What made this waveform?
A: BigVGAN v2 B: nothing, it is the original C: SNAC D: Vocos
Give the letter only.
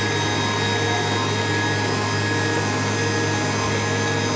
B